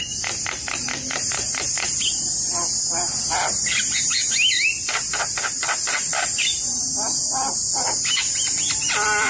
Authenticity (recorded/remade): recorded